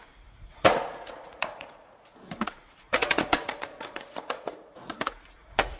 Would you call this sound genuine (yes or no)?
no